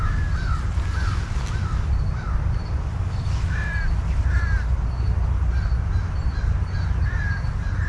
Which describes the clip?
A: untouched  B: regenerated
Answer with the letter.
A